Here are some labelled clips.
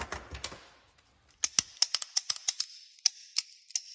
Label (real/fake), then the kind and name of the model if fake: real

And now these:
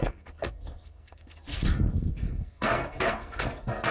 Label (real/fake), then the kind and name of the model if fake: fake, codec, SNAC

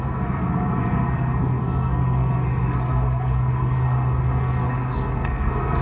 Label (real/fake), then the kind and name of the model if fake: fake, codec, SNAC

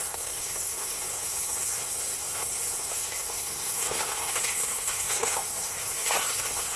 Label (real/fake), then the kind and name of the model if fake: fake, codec, SNAC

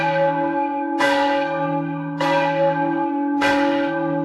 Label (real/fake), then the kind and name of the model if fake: fake, codec, SNAC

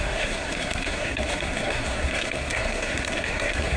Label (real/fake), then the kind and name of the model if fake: fake, codec, SNAC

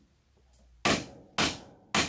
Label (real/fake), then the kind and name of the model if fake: real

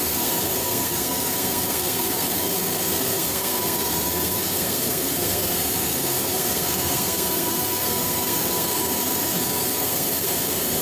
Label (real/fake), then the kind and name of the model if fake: fake, codec, SNAC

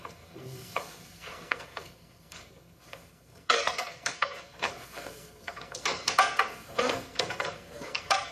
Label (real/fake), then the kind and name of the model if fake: fake, codec, SNAC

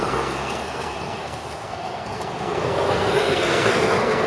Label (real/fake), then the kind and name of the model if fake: fake, codec, SNAC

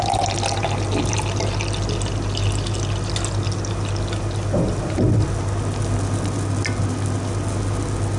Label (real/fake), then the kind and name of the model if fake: real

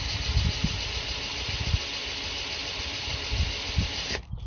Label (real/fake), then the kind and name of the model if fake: real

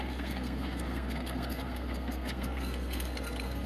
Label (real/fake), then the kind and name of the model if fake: fake, codec, SNAC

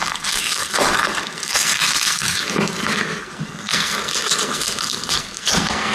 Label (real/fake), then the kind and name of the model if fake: fake, codec, SNAC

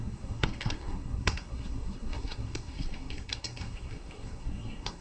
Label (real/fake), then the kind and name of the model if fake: fake, codec, SNAC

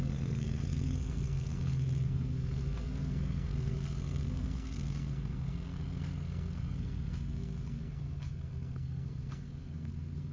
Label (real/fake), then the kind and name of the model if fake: fake, codec, SNAC